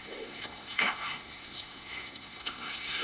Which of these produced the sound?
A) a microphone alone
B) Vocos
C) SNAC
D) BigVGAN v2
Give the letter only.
C